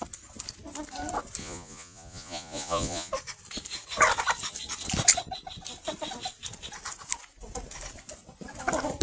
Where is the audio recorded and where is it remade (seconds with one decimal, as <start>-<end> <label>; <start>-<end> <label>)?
0.0-1.4 recorded; 1.4-3.1 remade; 3.1-9.0 recorded